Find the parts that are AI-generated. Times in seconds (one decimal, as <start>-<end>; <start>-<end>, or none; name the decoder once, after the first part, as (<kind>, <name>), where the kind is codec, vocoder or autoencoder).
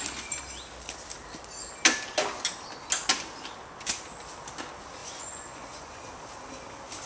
5.0-6.1 (vocoder, Vocos)